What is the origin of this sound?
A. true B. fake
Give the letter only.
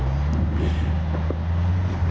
A